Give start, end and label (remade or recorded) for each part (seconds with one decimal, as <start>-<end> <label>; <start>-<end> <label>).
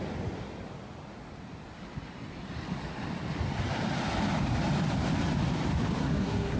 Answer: 0.0-6.0 recorded; 6.0-6.6 remade